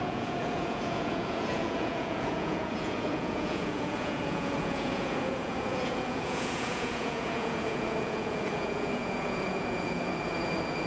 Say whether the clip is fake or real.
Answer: fake